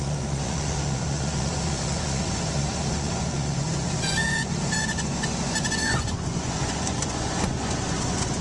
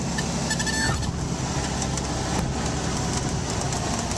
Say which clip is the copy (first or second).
first